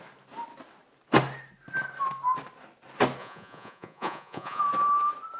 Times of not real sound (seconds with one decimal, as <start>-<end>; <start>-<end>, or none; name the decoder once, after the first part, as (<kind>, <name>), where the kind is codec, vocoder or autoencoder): 3.2-4.6 (vocoder, Vocos)